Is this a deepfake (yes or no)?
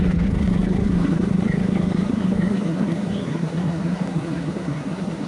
yes